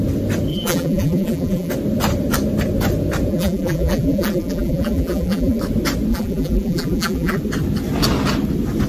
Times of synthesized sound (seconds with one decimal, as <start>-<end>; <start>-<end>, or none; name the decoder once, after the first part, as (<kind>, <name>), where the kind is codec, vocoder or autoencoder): 0.5-1.7 (vocoder, BigVGAN v2); 3.3-5.6; 6.1-7.4